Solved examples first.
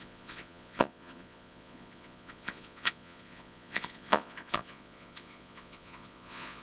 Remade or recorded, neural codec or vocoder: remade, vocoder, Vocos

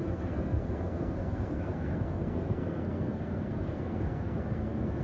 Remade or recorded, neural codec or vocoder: remade, codec, SNAC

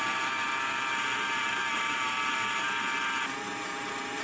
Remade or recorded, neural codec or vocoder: recorded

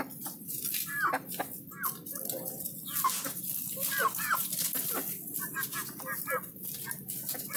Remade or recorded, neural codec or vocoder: recorded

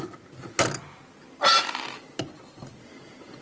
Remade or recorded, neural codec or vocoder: recorded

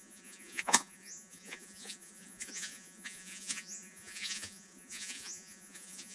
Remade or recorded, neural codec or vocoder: remade, vocoder, Vocos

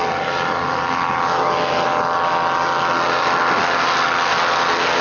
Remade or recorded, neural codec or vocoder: recorded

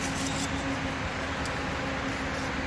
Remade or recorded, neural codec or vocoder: recorded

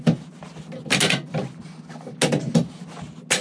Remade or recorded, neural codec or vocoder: recorded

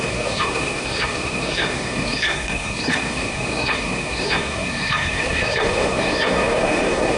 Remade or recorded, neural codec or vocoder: remade, codec, SNAC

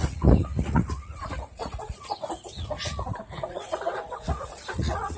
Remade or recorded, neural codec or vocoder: remade, vocoder, Vocos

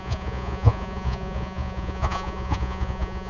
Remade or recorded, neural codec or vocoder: remade, vocoder, Vocos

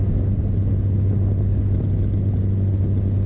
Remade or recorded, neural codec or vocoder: recorded